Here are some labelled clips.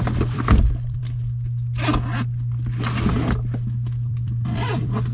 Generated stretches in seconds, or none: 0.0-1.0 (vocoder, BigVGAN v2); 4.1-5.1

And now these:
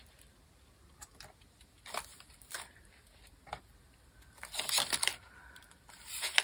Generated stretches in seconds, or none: 2.1-5.9 (vocoder, BigVGAN v2)

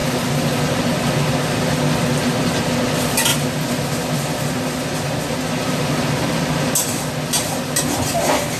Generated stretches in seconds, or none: none